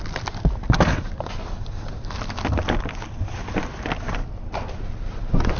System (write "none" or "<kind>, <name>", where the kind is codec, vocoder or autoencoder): none